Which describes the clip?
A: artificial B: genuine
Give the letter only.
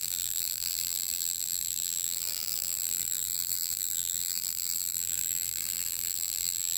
A